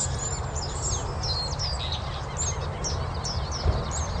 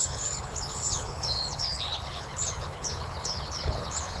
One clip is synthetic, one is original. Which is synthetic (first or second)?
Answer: second